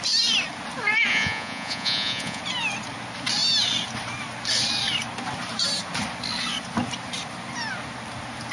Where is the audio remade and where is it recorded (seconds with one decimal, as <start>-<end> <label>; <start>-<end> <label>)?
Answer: 0.0-1.1 recorded; 1.1-2.4 remade; 2.4-8.5 recorded